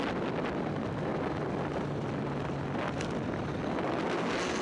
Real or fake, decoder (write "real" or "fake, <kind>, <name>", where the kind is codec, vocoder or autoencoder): real